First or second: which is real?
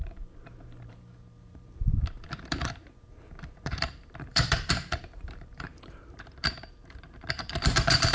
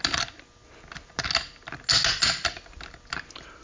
second